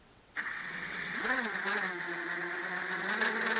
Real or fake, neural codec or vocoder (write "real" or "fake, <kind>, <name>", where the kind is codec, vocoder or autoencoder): fake, vocoder, WaveNeXt